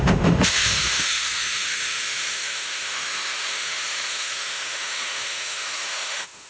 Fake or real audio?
fake